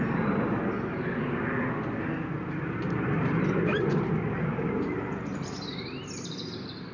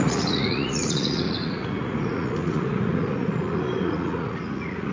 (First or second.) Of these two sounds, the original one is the first